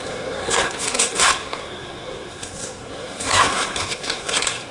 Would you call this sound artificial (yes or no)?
yes